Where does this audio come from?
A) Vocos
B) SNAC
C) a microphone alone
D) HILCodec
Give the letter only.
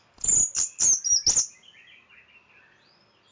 C